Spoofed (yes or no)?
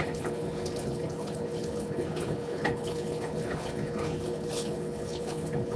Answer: yes